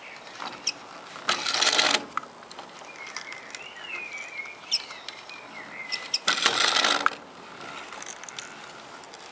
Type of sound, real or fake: real